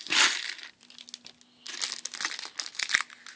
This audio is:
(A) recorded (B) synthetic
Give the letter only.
A